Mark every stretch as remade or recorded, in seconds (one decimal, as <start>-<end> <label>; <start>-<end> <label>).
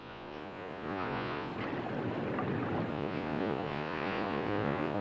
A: 0.0-1.5 remade; 1.5-2.9 recorded; 2.9-5.0 remade